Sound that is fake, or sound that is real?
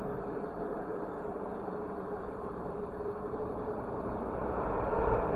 fake